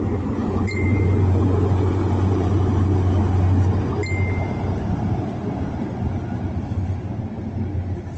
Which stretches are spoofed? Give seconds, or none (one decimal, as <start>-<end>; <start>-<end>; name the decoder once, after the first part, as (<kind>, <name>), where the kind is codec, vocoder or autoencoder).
0.4-2.5 (vocoder, Vocos)